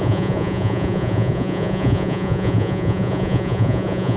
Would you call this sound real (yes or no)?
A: no